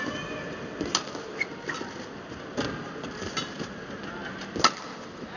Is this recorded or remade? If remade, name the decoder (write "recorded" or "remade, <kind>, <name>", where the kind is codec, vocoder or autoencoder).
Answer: recorded